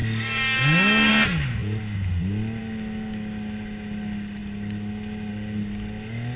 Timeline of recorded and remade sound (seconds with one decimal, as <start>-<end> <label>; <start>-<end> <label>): 0.0-1.1 remade; 1.1-6.4 recorded